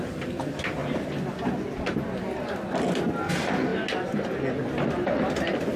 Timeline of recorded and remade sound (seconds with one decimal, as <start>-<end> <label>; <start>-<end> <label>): 0.0-5.8 recorded